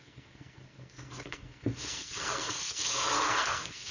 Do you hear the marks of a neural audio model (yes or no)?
yes